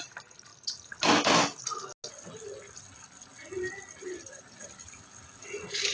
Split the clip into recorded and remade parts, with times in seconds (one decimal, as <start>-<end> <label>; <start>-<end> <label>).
0.0-0.5 remade; 0.5-4.0 recorded; 4.0-5.9 remade